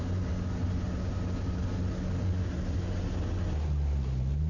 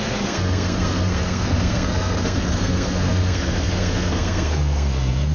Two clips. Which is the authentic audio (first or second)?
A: first